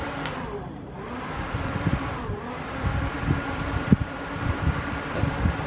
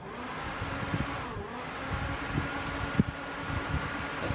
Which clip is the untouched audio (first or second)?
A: second